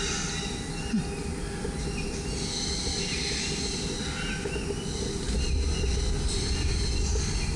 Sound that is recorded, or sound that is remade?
recorded